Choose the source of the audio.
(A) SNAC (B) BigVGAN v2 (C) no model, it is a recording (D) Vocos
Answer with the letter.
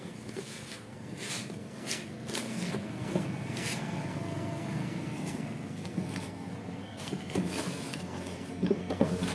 A